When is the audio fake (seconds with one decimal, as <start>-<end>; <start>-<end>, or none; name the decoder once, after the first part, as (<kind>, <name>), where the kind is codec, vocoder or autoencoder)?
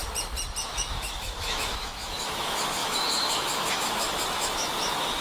0.6-5.2 (autoencoder, DAC-VAE)